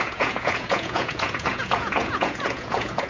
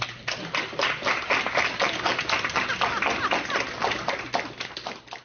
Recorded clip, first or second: second